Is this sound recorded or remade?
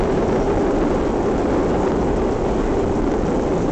recorded